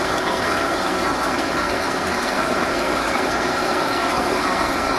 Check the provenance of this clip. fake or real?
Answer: fake